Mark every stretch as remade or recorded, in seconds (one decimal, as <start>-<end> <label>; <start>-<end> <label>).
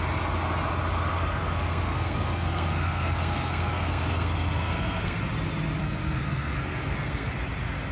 0.0-1.1 recorded; 1.1-5.2 remade; 5.2-5.8 recorded; 5.8-7.3 remade; 7.3-7.9 recorded